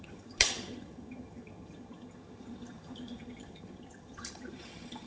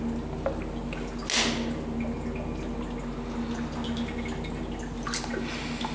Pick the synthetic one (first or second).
first